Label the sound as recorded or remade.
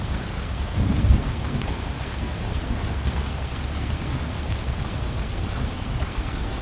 remade